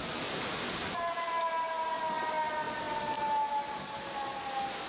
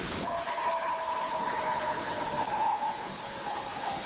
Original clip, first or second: first